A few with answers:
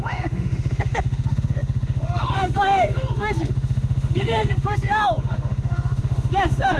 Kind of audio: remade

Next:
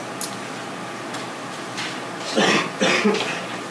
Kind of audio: recorded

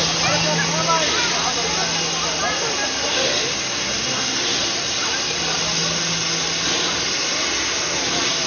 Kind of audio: recorded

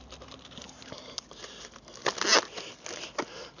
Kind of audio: recorded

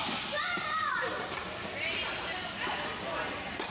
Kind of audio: recorded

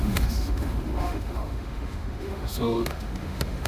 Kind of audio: remade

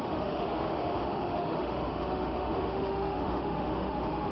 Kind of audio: remade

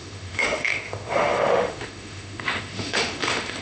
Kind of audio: remade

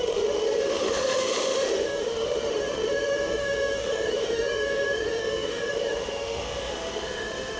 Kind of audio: remade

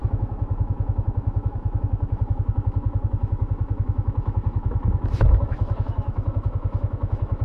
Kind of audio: remade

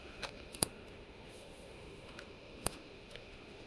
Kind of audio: remade